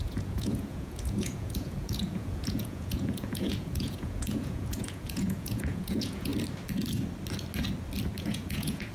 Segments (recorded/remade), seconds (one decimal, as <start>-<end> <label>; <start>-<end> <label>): 0.0-6.3 remade; 6.3-8.2 recorded; 8.2-8.9 remade